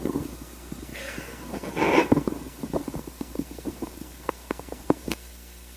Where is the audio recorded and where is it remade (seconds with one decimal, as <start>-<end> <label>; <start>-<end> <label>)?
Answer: 0.0-5.8 remade